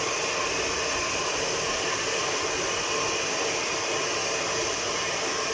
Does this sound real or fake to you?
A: real